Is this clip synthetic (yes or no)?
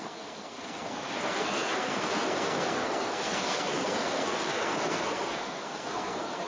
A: yes